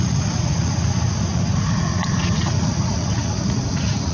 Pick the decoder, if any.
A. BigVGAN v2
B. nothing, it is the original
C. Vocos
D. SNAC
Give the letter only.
C